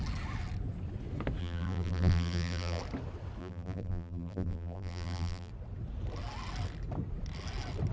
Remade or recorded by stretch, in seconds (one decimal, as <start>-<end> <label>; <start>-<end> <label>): 0.0-1.4 recorded; 1.4-2.8 remade; 2.8-3.4 recorded; 3.4-5.5 remade; 5.5-7.9 recorded